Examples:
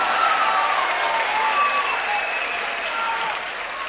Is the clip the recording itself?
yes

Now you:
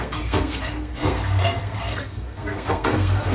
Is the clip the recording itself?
no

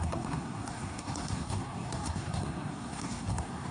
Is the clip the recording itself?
no